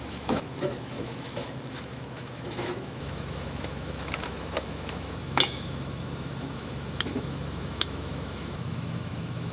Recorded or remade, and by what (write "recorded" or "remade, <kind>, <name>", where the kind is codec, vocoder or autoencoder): remade, autoencoder, DAC-VAE